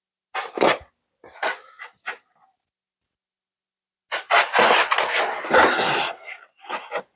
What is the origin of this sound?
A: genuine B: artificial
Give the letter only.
A